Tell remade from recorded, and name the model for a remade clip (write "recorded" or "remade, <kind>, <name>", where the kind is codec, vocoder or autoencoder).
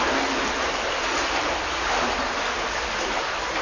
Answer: recorded